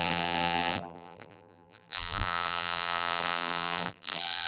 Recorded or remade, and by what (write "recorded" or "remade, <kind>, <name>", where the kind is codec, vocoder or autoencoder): remade, vocoder, BigVGAN v2